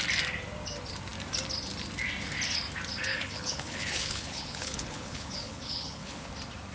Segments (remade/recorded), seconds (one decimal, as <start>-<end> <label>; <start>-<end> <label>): 0.0-3.1 recorded; 3.1-6.3 remade; 6.3-6.7 recorded